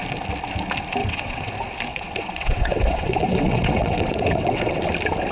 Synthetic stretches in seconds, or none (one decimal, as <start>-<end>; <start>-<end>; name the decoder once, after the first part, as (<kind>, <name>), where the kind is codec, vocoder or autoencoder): 1.0-1.5 (vocoder, WaveNeXt); 1.9-4.8